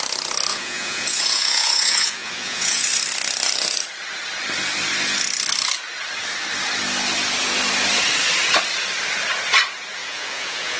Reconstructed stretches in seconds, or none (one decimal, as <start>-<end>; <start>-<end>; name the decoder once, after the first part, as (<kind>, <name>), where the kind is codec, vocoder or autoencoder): 0.5-2.8 (vocoder, Vocos); 10.0-10.8